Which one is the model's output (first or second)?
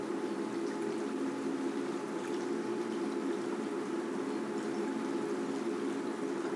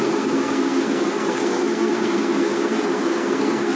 second